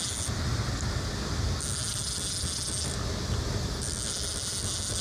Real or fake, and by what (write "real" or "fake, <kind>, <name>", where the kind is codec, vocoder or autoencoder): real